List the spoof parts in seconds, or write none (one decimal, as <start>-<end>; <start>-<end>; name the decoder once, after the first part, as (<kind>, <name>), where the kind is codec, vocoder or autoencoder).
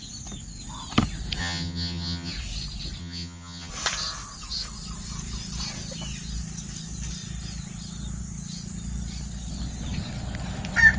1.4-2.3 (vocoder, HiFi-GAN); 3.0-3.7